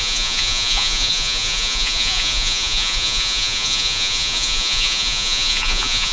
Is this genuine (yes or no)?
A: no